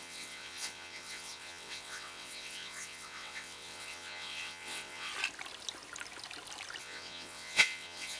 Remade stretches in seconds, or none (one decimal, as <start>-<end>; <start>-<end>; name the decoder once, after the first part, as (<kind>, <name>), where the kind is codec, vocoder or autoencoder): 0.0-5.1 (vocoder, WaveNeXt); 6.8-8.2